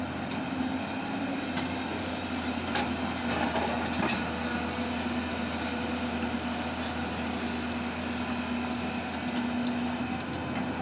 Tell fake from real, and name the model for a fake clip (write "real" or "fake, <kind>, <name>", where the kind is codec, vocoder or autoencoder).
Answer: real